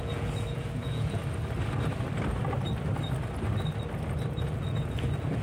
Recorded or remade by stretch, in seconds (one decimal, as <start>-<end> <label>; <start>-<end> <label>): 0.0-1.2 remade; 1.2-4.4 recorded; 4.4-5.4 remade